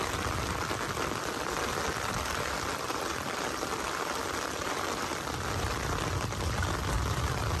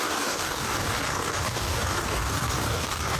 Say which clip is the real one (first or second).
first